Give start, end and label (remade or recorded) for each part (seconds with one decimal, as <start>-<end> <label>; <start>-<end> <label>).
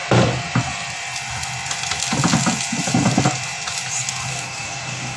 0.0-4.3 recorded; 4.3-5.2 remade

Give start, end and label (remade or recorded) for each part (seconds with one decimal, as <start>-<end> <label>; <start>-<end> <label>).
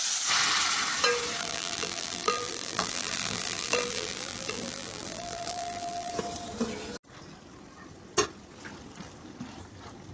0.0-1.4 recorded; 1.4-6.1 remade; 6.1-10.1 recorded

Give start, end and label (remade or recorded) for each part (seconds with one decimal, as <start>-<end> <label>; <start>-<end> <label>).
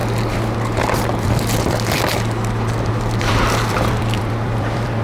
0.0-3.0 recorded; 3.0-5.0 remade